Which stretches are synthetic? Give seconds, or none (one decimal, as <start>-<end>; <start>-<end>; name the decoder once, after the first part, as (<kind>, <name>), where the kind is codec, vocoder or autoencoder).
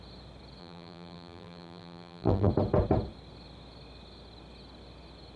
0.6-2.5 (vocoder, BigVGAN v2)